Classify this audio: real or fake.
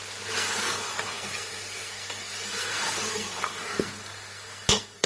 fake